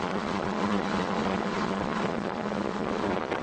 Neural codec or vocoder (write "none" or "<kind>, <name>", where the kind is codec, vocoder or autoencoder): vocoder, Vocos